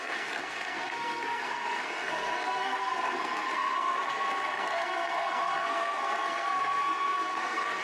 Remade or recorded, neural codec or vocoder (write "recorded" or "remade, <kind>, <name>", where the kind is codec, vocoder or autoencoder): remade, codec, SNAC